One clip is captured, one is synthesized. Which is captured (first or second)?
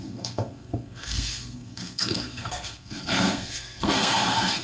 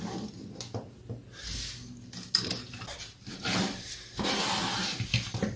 second